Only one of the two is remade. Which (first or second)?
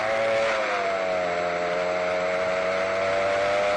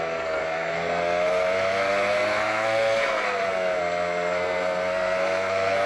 second